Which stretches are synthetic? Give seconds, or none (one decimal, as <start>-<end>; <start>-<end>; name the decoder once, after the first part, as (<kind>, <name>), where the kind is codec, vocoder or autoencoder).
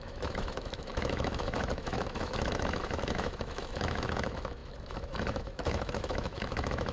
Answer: 0.0-6.9 (autoencoder, DAC-VAE)